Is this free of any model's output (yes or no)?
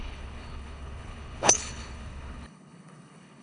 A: no